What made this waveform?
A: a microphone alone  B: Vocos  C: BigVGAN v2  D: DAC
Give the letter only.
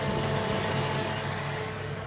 D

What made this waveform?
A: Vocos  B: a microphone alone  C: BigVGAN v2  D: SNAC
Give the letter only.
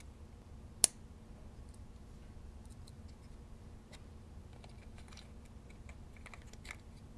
B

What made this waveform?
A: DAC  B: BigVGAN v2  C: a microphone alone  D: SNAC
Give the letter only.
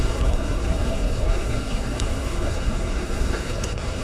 D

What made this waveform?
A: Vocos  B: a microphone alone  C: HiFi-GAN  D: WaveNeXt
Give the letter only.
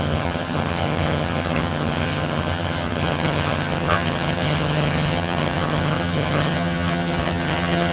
C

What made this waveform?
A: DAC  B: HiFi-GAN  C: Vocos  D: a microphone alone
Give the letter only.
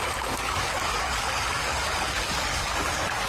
A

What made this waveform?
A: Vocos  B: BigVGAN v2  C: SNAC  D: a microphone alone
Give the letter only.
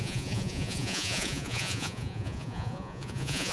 A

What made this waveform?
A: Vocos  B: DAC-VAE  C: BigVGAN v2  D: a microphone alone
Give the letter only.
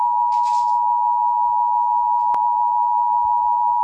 D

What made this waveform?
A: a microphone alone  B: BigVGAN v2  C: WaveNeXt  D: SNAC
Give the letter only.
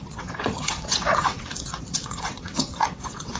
C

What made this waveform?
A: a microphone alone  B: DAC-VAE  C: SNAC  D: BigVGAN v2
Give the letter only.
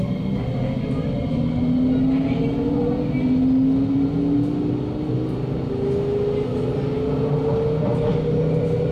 A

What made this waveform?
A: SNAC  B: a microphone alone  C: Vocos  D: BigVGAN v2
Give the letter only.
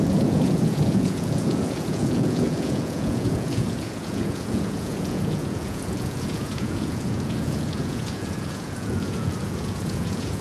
C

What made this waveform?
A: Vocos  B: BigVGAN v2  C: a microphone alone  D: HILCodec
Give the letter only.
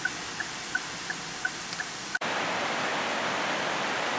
C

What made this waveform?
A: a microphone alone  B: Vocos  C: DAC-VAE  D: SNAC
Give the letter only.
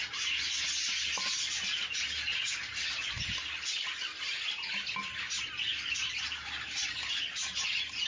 A